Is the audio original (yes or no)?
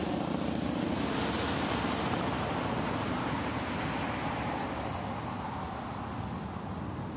yes